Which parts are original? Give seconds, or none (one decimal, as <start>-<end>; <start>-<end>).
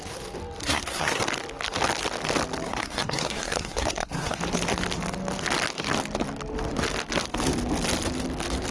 0.0-0.6; 1.2-2.7; 4.4-8.7